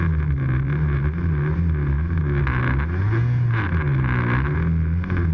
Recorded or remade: recorded